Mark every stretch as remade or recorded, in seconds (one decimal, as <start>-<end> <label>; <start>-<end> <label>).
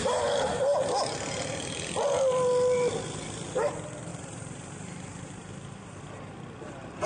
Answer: 0.0-4.1 recorded; 4.1-5.5 remade; 5.5-7.1 recorded